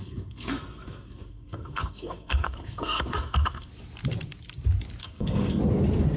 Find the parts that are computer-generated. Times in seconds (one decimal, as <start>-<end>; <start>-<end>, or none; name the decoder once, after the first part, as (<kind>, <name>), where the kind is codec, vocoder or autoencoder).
0.0-3.7 (codec, SNAC); 5.0-5.6